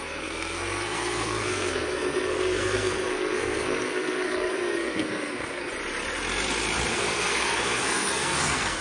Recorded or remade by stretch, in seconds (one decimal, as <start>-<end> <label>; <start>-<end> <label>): 0.0-5.7 remade; 5.7-6.9 recorded; 6.9-8.8 remade